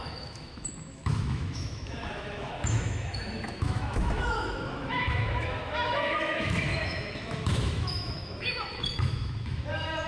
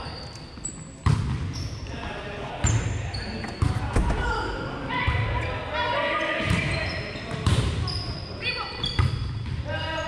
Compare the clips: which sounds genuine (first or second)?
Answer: second